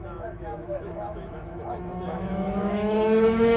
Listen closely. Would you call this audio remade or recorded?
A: remade